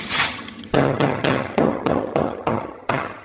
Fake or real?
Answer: fake